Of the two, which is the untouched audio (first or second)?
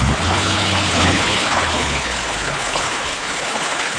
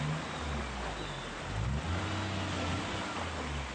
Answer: second